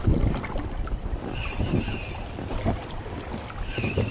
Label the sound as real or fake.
real